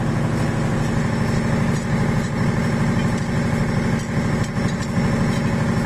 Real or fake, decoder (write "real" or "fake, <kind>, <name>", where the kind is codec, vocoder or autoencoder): real